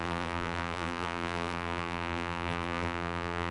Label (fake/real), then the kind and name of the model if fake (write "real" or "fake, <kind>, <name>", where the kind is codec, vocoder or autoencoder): fake, vocoder, BigVGAN v2